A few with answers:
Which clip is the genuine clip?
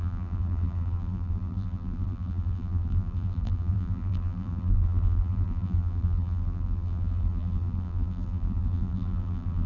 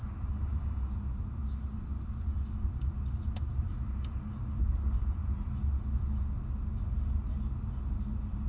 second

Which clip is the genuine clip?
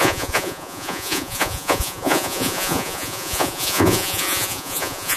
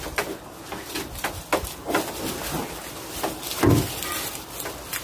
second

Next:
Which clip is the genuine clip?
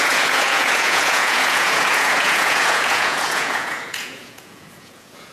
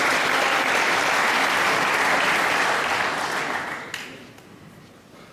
second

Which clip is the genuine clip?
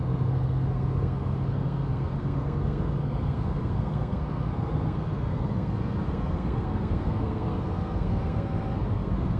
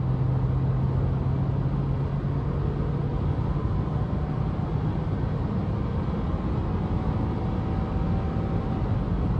second